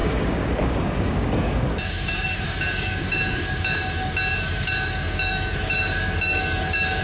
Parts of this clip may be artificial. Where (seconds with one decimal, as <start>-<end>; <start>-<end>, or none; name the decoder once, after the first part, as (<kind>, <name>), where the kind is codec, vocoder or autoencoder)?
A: 0.0-7.0 (codec, DAC)